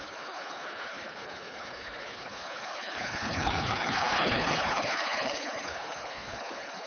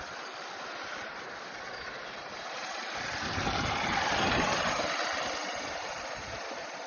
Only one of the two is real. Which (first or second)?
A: second